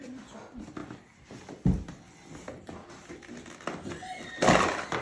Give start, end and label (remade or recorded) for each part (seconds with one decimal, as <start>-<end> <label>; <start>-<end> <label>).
0.0-5.0 recorded